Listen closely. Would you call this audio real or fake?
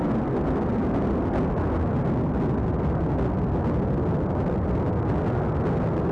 real